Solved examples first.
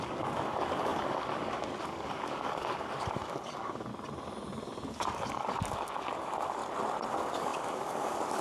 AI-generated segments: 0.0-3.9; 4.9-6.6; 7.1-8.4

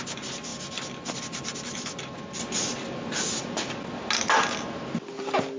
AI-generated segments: none

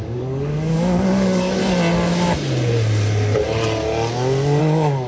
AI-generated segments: 0.0-1.6; 4.6-5.1

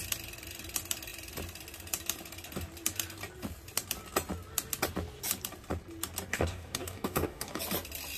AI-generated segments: 6.3-7.6

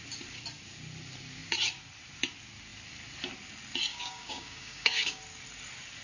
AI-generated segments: 3.9-5.2

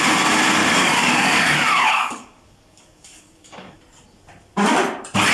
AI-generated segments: 0.6-3.8

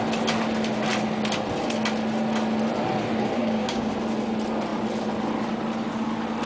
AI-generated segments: 3.4-3.9